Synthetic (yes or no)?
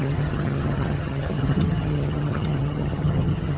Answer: yes